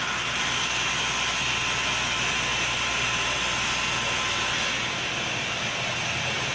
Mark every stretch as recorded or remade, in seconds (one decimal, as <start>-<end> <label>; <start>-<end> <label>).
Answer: 0.0-6.5 recorded

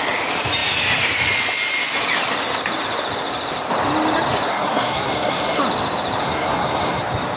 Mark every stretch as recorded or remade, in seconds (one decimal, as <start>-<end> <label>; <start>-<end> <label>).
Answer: 0.0-4.5 recorded; 4.5-5.6 remade; 5.6-6.2 recorded; 6.2-7.0 remade; 7.0-7.4 recorded

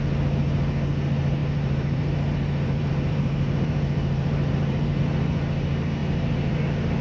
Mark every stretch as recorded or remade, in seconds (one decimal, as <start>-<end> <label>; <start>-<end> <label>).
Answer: 0.0-1.4 recorded; 1.4-5.0 remade; 5.0-6.0 recorded; 6.0-6.6 remade; 6.6-7.0 recorded

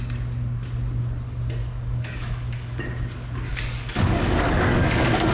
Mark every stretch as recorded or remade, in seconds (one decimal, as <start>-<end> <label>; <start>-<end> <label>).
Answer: 0.0-1.6 recorded; 1.6-2.8 remade; 2.8-3.5 recorded; 3.5-5.3 remade

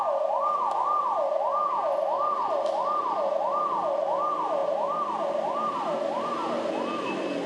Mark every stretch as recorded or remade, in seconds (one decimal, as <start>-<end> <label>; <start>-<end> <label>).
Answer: 0.0-4.6 recorded; 4.6-6.3 remade; 6.3-7.5 recorded

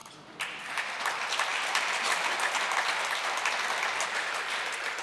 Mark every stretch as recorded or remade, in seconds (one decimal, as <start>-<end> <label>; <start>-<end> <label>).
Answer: 0.0-5.0 recorded